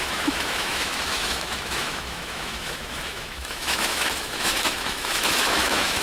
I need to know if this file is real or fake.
fake